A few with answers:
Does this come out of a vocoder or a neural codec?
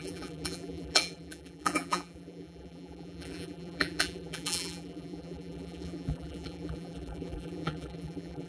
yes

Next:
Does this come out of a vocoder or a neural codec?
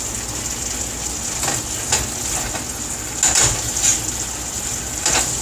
no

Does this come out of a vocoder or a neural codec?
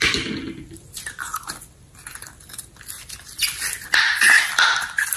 no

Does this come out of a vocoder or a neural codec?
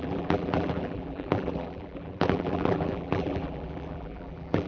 yes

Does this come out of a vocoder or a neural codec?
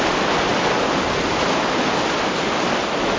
no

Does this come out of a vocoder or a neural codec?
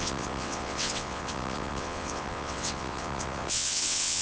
yes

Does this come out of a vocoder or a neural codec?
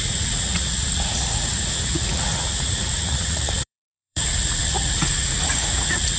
yes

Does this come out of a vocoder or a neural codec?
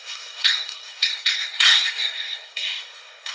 yes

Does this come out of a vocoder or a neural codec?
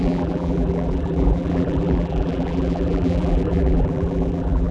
yes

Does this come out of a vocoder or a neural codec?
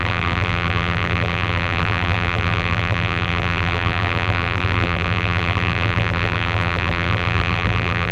yes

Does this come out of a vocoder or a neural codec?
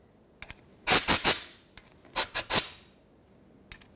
no